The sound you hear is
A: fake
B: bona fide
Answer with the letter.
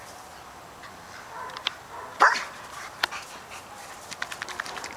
A